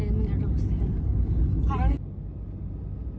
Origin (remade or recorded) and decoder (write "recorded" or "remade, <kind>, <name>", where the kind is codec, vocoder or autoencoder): recorded